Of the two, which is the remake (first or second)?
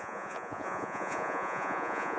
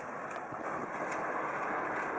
first